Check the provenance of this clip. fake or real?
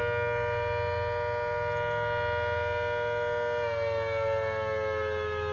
real